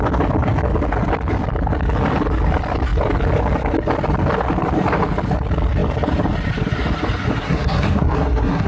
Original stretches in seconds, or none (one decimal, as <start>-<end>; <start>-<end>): 0.0-7.4

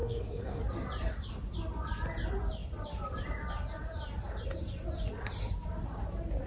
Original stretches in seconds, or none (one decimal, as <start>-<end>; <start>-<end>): 0.6-6.5